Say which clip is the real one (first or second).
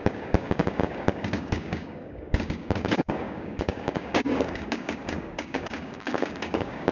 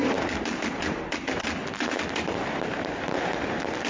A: second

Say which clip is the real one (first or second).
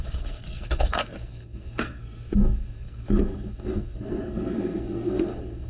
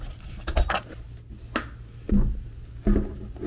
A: second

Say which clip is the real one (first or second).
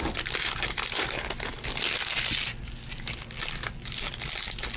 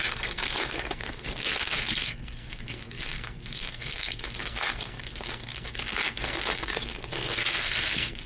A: first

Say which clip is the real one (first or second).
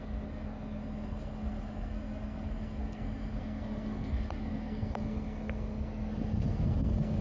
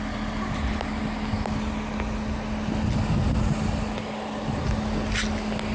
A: second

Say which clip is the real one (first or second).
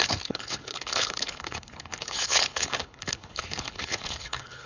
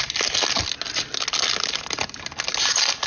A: second